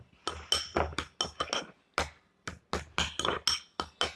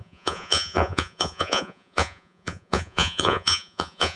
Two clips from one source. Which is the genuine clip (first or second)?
first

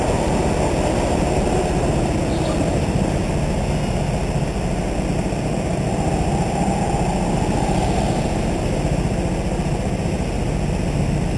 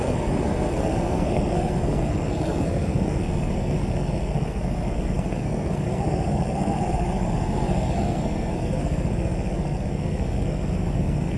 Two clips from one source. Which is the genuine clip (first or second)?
first